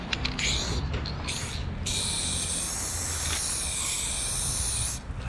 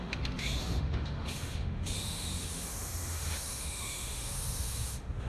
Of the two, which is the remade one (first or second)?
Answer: second